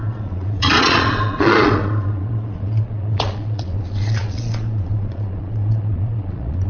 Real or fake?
fake